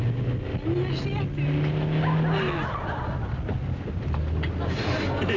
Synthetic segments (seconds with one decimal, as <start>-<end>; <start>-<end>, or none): none